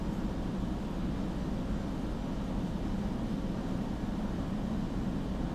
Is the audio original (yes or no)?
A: yes